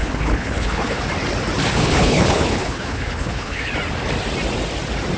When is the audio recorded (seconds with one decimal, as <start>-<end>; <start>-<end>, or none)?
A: 1.0-1.7; 3.7-5.2